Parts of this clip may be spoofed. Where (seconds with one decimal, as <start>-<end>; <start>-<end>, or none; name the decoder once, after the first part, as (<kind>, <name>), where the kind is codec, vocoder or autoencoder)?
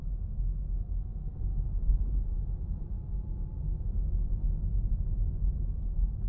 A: none